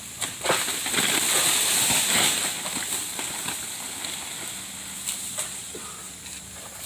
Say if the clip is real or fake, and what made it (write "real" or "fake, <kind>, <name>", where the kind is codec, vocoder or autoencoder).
real